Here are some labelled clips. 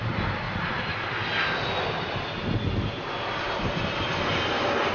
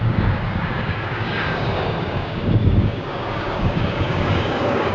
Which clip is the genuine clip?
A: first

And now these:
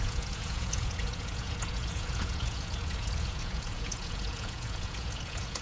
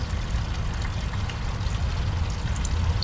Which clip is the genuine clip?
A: second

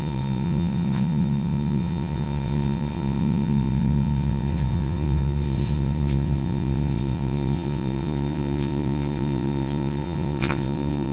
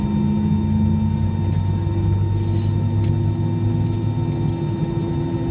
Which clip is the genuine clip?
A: second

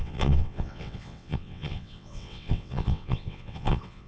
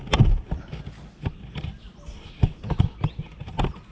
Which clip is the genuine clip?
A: second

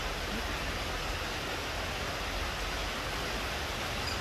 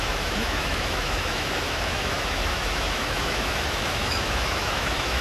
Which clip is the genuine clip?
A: first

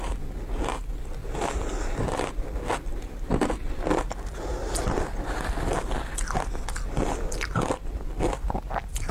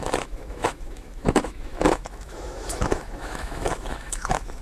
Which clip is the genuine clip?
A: first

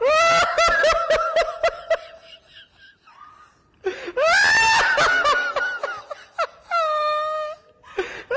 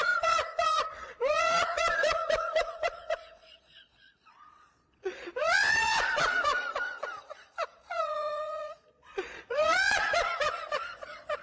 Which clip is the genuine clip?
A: first